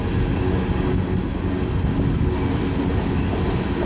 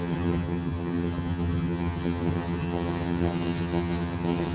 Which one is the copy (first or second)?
second